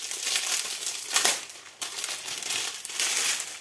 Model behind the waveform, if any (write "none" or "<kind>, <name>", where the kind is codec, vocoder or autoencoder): none